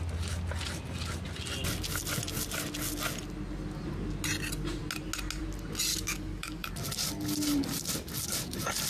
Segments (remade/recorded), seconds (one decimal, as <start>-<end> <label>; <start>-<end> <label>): 0.0-5.9 recorded; 5.9-6.7 remade; 6.7-8.9 recorded